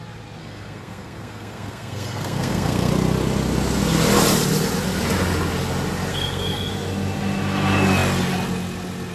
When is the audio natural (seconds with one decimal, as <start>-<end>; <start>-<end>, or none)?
0.0-0.4; 2.9-6.1; 6.7-9.1